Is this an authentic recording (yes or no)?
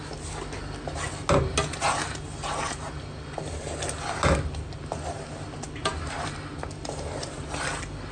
yes